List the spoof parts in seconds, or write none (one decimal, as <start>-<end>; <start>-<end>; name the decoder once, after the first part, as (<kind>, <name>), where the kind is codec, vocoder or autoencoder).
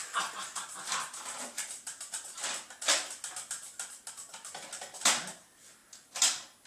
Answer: none